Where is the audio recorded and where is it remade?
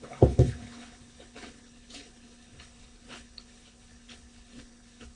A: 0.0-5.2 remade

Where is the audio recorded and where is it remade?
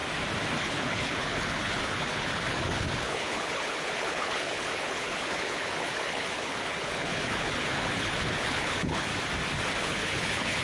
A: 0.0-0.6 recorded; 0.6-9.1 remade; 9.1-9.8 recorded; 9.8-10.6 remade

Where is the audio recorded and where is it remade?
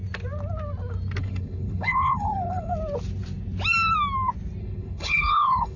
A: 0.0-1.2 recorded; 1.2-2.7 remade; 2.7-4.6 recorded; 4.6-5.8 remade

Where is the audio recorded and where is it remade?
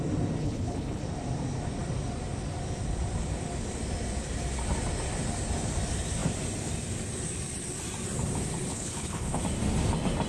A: 0.0-0.4 recorded; 0.4-1.0 remade; 1.0-8.7 recorded; 8.7-9.4 remade; 9.4-10.3 recorded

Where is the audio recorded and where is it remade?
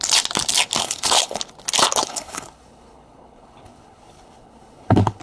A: 0.0-0.8 recorded; 0.8-1.4 remade; 1.4-2.0 recorded; 2.0-5.2 remade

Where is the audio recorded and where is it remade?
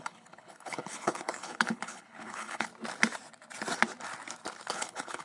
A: 0.0-2.7 remade; 2.7-4.7 recorded; 4.7-5.2 remade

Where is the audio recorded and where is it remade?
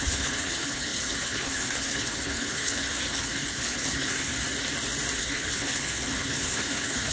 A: 0.0-4.3 remade; 4.3-5.2 recorded; 5.2-7.1 remade